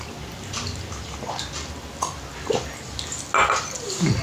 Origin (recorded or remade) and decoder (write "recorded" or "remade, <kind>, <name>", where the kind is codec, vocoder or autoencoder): recorded